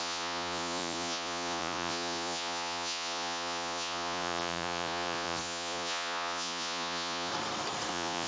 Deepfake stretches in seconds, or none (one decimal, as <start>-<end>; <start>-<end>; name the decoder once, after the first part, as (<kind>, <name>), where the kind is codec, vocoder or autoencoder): 0.0-7.3 (vocoder, Vocos); 7.9-8.3